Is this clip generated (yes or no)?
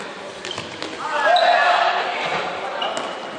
no